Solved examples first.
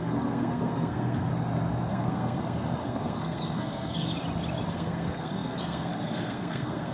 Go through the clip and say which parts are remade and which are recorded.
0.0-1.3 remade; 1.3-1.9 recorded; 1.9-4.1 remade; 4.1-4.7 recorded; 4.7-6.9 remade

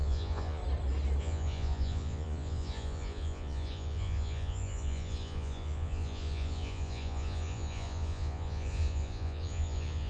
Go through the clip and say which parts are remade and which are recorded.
0.0-0.6 remade; 0.6-1.2 recorded; 1.2-10.1 remade

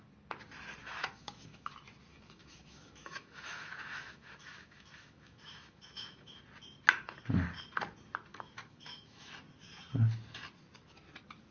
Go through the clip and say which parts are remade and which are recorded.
0.0-0.8 recorded; 0.8-1.7 remade; 1.7-2.1 recorded; 2.1-6.4 remade; 6.4-8.3 recorded; 8.3-9.3 remade; 9.3-11.5 recorded

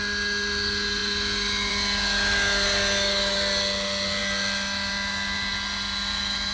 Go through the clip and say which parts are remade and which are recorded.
0.0-6.5 recorded

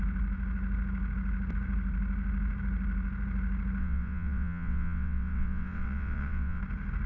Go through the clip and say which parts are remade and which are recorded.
0.0-3.8 recorded; 3.8-6.6 remade; 6.6-7.1 recorded

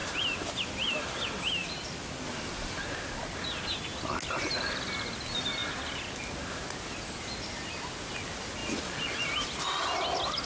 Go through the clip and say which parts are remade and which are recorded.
0.0-1.1 remade; 1.1-1.6 recorded; 1.6-2.2 remade; 2.2-10.5 recorded